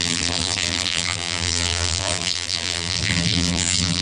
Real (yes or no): no